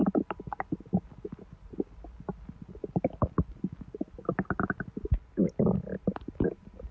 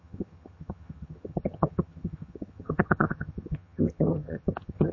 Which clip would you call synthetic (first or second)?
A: second